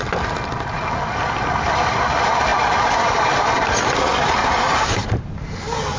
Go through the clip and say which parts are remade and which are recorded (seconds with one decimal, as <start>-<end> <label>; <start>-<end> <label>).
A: 0.0-4.4 recorded; 4.4-5.6 remade; 5.6-6.0 recorded